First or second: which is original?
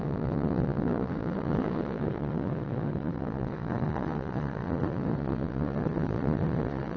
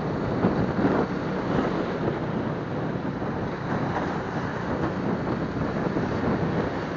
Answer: second